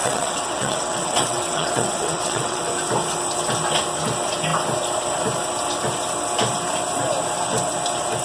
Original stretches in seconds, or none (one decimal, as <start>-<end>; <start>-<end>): 2.7-8.2

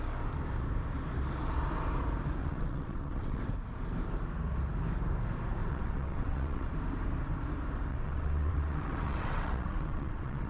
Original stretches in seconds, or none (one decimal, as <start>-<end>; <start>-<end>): 0.0-2.4; 3.4-5.6; 6.7-7.9